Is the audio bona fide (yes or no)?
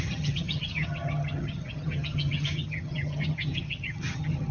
no